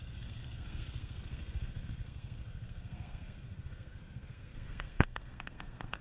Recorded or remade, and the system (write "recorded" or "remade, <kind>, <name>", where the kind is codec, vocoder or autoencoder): remade, codec, SNAC